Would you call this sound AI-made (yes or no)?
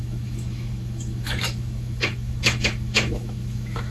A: yes